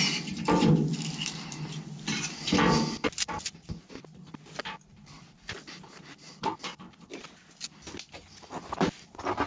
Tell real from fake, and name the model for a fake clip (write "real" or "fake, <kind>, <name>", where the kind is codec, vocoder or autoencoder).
real